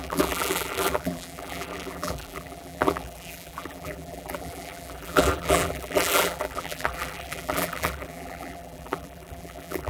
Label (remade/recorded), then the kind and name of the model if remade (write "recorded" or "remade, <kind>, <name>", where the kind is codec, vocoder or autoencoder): remade, vocoder, BigVGAN v2